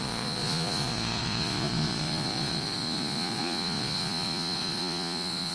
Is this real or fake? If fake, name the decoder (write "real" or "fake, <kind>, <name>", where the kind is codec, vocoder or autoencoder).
fake, vocoder, Vocos